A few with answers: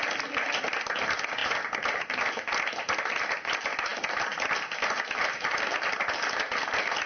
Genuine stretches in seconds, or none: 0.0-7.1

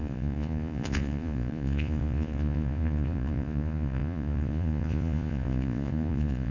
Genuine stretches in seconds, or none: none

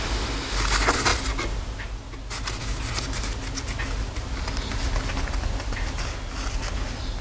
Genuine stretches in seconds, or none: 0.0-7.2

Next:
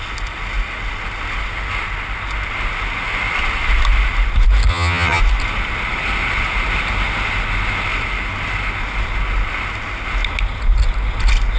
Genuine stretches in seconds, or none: 0.0-4.7; 5.2-11.6